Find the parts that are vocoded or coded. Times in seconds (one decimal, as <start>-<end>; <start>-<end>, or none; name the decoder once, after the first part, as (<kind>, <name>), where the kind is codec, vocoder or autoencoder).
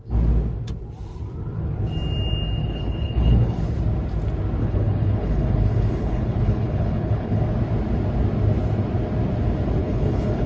2.6-3.6 (codec, HILCodec); 4.6-7.4; 9.8-10.5